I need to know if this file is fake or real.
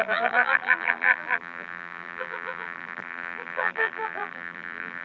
fake